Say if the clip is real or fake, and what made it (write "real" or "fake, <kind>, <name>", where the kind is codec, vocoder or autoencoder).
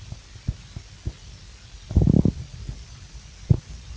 real